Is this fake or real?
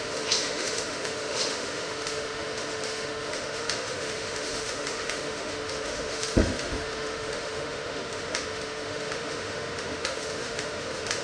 fake